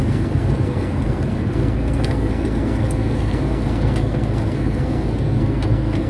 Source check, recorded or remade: remade